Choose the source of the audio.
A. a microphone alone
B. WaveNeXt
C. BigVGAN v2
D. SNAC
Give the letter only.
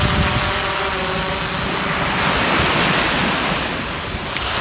A